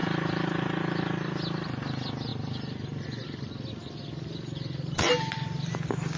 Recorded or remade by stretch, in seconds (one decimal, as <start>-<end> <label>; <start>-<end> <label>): 0.0-6.2 recorded